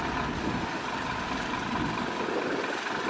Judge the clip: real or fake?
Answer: real